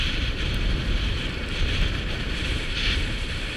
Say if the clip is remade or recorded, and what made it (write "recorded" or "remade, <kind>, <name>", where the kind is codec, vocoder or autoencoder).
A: remade, vocoder, BigVGAN v2